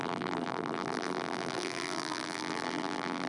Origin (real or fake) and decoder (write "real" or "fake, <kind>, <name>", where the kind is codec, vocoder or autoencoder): fake, vocoder, BigVGAN v2